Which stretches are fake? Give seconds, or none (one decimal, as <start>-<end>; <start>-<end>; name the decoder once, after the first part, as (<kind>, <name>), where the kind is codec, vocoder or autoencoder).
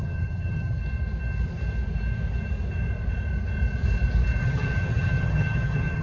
0.0-0.8 (vocoder, HiFi-GAN); 4.4-6.0